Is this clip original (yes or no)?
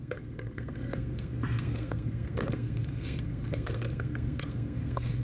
no